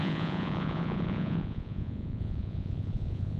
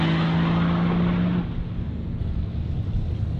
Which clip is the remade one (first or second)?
first